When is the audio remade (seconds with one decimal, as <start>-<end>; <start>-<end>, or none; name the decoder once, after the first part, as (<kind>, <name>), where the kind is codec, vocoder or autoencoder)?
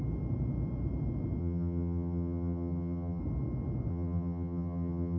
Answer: 1.4-3.2 (vocoder, HiFi-GAN); 3.9-5.2